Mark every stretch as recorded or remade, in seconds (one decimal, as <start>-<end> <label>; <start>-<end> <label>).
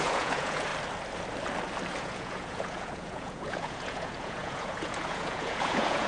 0.0-0.7 remade; 0.7-2.0 recorded; 2.0-6.1 remade